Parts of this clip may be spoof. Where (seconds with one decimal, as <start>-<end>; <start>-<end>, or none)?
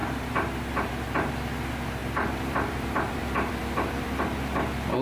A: 0.0-0.9; 2.0-4.2